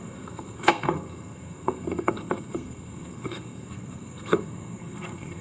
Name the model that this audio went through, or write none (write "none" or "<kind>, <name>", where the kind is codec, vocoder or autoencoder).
codec, SNAC